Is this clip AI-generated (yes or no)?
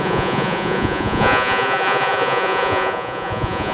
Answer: yes